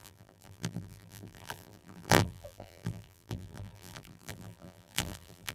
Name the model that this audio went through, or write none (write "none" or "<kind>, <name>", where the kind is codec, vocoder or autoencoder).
vocoder, BigVGAN v2